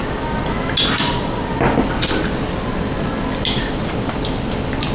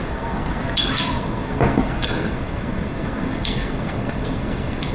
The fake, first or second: second